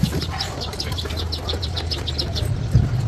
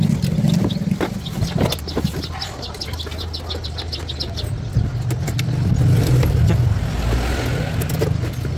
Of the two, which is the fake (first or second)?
first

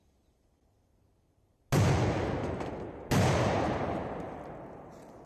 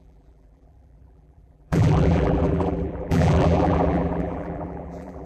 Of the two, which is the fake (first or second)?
second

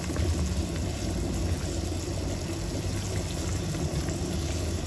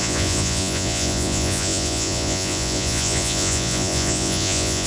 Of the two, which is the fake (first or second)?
second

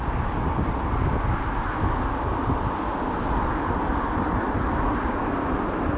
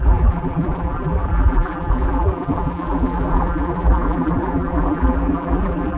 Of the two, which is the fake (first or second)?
second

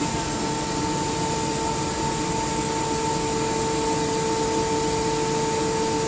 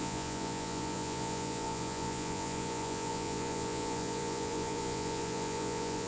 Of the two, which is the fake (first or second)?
second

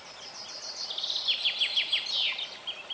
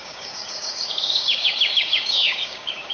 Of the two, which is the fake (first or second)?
second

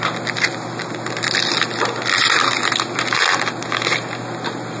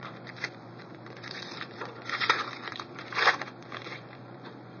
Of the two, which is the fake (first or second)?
second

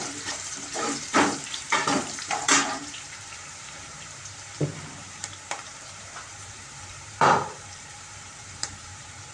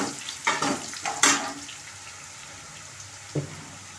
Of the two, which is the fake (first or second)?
first